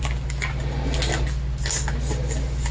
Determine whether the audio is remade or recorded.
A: recorded